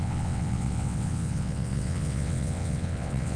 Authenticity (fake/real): fake